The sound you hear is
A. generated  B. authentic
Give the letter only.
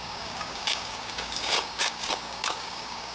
A